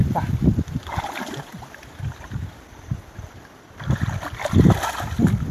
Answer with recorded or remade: remade